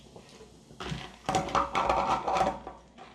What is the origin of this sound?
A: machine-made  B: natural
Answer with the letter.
B